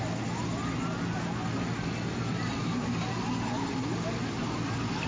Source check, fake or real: real